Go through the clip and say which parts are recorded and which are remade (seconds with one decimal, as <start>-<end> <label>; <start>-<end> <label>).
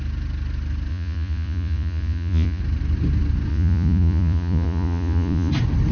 0.0-0.9 recorded; 0.9-2.6 remade; 2.6-3.5 recorded; 3.5-5.5 remade; 5.5-5.9 recorded